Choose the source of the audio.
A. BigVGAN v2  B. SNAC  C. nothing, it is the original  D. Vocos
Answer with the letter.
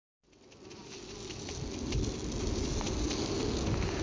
C